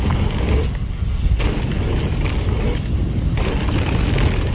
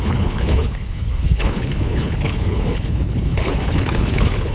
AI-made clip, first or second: second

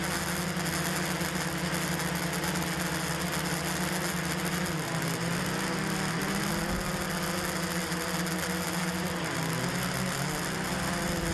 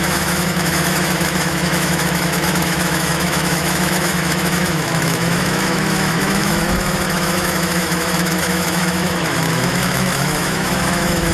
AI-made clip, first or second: second